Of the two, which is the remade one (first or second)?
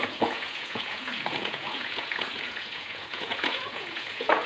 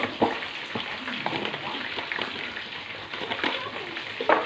first